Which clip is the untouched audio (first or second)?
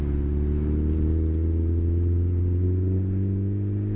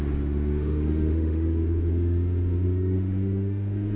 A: first